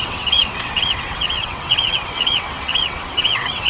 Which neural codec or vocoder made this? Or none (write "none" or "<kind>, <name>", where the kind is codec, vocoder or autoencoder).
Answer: vocoder, WaveNeXt